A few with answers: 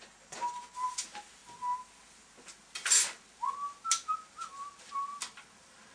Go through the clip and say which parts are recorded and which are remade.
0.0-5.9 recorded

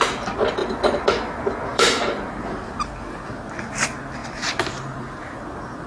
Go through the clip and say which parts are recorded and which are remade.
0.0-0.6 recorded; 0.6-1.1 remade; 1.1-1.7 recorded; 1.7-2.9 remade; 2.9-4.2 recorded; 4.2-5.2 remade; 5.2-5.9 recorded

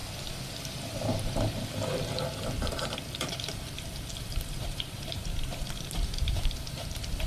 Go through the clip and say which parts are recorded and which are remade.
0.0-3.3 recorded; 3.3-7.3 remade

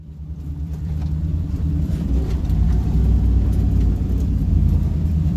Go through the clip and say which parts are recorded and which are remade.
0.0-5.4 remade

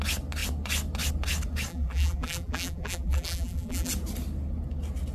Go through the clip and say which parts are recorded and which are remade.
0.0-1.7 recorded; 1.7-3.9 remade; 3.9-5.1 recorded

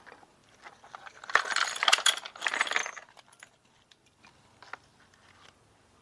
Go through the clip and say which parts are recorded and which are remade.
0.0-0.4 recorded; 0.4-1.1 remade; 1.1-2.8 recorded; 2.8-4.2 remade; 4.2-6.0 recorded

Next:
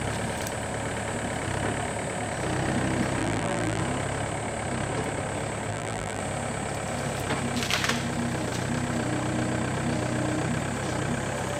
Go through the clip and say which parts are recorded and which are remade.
0.0-3.2 recorded; 3.2-3.8 remade; 3.8-5.7 recorded; 5.7-6.2 remade; 6.2-11.6 recorded